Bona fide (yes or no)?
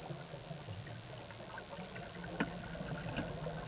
yes